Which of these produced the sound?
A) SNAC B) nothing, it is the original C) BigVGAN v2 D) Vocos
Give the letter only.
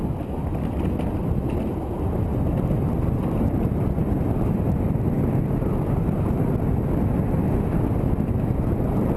B